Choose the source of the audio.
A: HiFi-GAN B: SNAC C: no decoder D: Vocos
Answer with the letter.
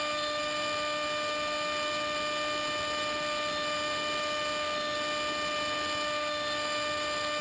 C